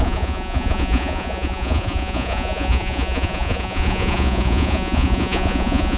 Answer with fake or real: fake